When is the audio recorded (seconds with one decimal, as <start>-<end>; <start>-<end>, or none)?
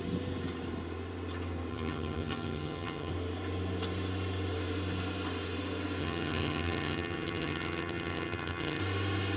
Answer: 0.0-1.7; 3.1-6.0; 8.8-9.4